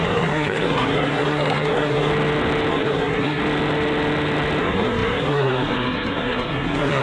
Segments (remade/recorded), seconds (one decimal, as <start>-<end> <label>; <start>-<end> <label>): 0.0-2.1 remade; 2.1-2.7 recorded; 2.7-3.4 remade; 3.4-4.6 recorded; 4.6-7.0 remade